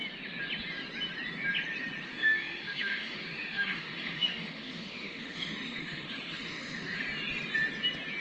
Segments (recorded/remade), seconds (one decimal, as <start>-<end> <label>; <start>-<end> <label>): 0.0-2.1 recorded; 2.1-7.0 remade; 7.0-8.2 recorded